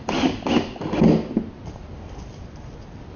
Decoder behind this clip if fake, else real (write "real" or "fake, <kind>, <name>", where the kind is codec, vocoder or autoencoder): real